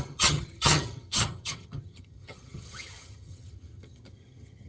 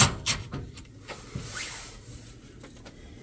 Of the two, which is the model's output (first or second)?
first